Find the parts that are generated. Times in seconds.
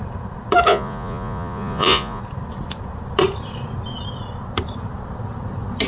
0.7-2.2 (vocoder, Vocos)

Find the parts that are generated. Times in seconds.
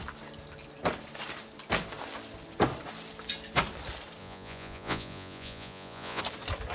4.2-6.2 (vocoder, Vocos)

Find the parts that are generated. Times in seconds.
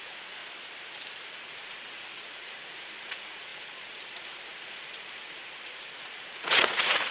0.0-0.4 (vocoder, Vocos); 1.5-7.1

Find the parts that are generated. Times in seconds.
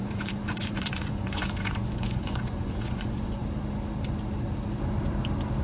0.0-3.4 (vocoder, Vocos)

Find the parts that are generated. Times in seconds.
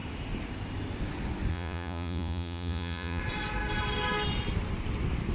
1.5-3.2 (vocoder, Vocos)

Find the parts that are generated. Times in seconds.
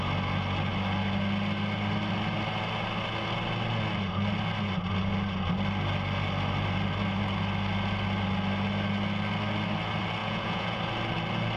10.2-10.8 (vocoder, Vocos)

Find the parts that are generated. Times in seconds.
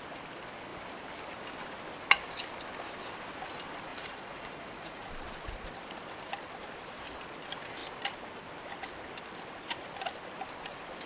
3.9-5.1 (vocoder, Vocos)